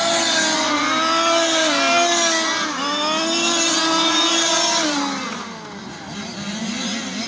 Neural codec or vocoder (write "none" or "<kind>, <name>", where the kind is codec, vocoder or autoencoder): none